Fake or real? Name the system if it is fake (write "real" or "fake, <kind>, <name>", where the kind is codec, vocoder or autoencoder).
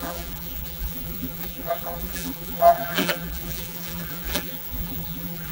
fake, vocoder, BigVGAN v2